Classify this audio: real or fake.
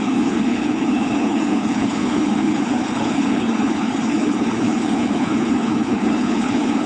fake